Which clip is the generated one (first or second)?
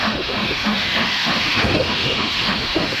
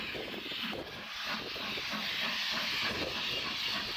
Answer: first